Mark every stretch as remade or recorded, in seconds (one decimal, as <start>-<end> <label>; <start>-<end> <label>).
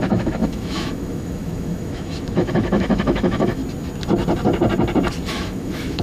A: 0.0-3.6 remade; 3.6-5.3 recorded; 5.3-6.0 remade